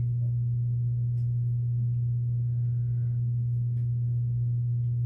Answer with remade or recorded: recorded